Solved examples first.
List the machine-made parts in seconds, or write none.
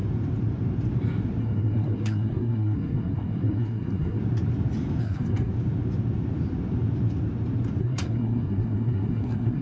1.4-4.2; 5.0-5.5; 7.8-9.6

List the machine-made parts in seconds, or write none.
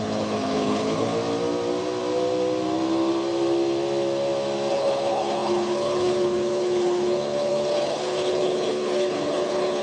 0.0-1.1; 4.7-9.8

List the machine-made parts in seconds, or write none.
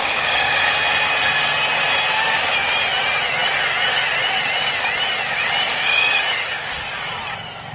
0.0-0.6; 5.7-6.7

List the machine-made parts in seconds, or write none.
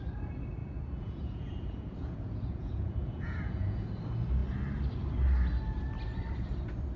0.6-3.8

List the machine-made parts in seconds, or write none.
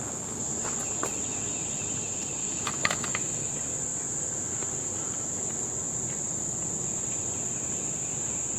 2.4-3.5